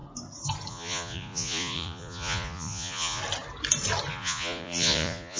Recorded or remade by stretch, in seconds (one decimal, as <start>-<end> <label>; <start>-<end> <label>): 0.0-0.7 recorded; 0.7-3.2 remade; 3.2-4.1 recorded; 4.1-5.4 remade